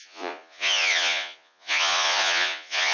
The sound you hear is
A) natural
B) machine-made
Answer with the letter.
B